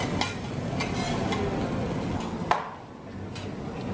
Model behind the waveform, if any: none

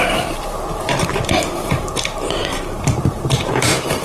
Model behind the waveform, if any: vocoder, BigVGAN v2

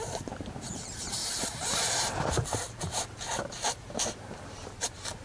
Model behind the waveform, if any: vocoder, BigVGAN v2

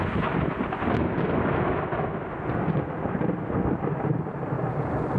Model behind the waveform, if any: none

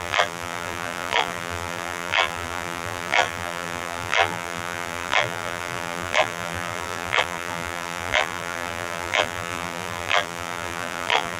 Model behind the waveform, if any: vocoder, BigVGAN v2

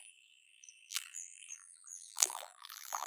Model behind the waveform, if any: vocoder, BigVGAN v2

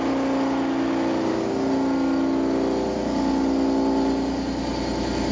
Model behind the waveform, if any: none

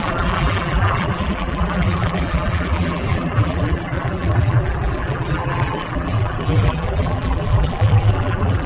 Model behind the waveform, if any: vocoder, BigVGAN v2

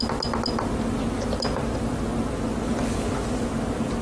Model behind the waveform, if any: none